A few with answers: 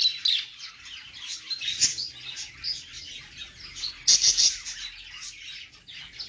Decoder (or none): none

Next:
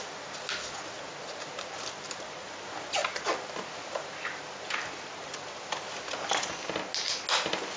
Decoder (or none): none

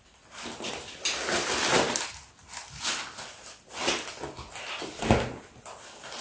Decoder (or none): none